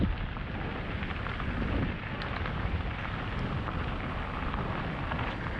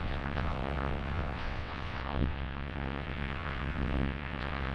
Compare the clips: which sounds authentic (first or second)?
first